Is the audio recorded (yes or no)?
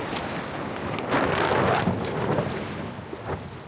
yes